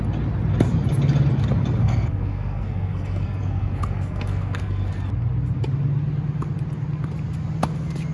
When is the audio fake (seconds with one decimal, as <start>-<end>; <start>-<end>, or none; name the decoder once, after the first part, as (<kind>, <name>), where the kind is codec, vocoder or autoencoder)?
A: 1.8-4.9 (codec, SNAC)